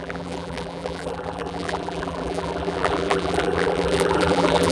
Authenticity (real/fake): fake